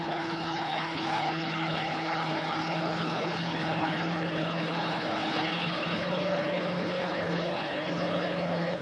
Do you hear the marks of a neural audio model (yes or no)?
yes